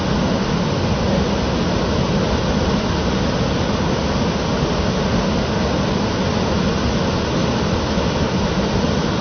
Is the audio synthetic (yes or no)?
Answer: no